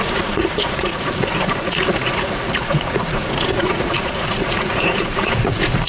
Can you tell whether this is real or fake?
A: fake